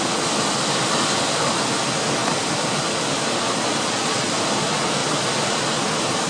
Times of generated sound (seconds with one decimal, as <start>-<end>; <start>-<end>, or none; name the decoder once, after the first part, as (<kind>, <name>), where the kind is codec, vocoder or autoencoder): 3.7-4.3 (vocoder, Vocos)